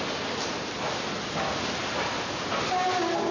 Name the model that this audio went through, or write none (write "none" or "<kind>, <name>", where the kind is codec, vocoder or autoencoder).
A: none